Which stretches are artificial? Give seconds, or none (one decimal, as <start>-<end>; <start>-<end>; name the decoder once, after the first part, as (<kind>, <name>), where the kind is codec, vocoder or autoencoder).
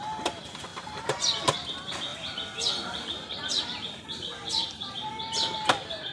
0.7-1.2 (vocoder, BigVGAN v2); 2.1-5.1